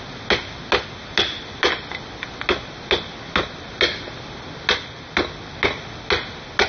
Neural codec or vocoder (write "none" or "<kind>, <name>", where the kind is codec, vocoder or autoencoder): none